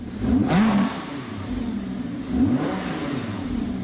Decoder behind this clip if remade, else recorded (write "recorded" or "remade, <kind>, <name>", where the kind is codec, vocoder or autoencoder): remade, vocoder, BigVGAN v2